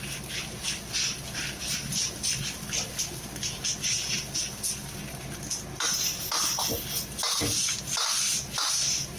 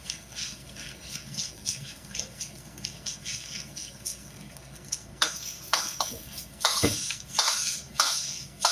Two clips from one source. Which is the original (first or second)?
first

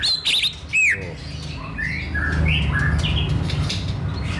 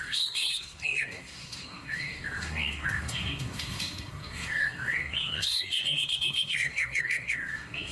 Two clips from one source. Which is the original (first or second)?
first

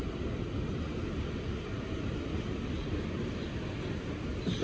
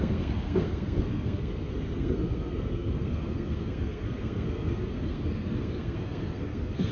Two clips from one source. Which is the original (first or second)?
first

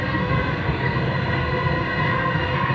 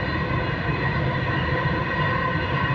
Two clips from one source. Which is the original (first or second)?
second